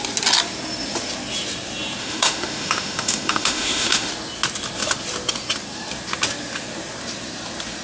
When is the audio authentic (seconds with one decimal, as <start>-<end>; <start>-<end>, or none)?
0.0-2.0; 4.1-7.8